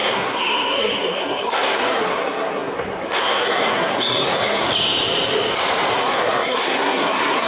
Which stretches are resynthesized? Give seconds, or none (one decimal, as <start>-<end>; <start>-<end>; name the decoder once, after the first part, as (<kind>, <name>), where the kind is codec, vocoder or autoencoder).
0.0-4.7 (codec, SNAC); 5.9-7.5